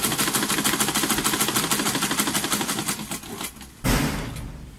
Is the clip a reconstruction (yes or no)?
no